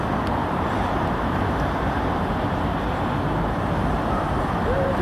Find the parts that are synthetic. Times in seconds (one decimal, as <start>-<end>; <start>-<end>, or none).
0.4-3.4; 3.8-4.5

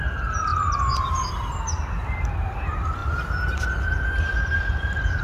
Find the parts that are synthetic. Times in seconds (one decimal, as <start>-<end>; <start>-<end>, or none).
none

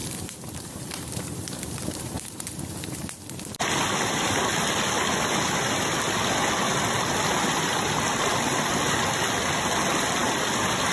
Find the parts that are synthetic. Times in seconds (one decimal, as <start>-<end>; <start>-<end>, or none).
0.0-3.1

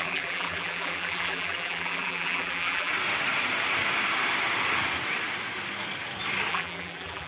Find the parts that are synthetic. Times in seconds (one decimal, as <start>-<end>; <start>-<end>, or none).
0.0-2.9; 6.5-7.3

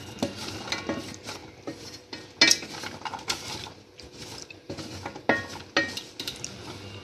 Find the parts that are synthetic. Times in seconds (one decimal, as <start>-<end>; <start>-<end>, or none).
none

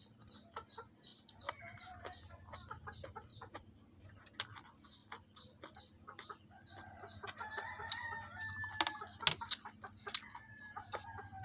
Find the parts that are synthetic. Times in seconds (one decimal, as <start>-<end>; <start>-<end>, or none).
1.1-2.0; 3.3-4.1

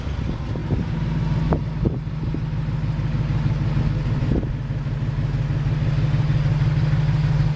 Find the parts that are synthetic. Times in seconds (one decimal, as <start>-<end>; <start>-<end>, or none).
none

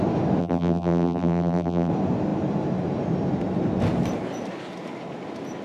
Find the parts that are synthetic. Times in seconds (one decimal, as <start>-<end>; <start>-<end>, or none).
0.4-1.9